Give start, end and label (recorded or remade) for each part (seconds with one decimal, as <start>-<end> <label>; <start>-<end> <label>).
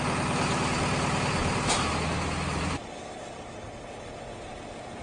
0.0-5.0 recorded